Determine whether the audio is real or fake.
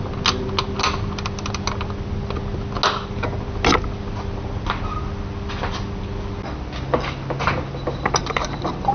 real